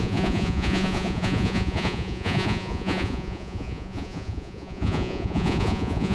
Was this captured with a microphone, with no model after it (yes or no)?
no